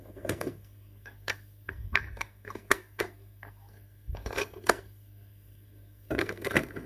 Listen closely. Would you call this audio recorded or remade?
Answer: remade